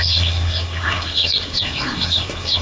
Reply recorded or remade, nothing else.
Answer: remade